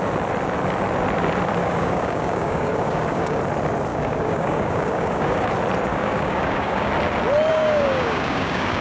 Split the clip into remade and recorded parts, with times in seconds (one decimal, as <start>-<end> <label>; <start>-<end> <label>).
0.0-1.6 recorded; 1.6-3.4 remade; 3.4-3.9 recorded; 3.9-5.5 remade; 5.5-5.9 recorded; 5.9-6.9 remade; 6.9-7.5 recorded; 7.5-8.8 remade